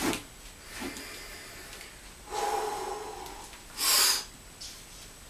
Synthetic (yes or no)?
no